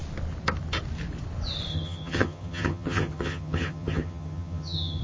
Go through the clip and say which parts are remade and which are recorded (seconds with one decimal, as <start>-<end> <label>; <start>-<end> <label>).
0.0-1.7 recorded; 1.7-5.0 remade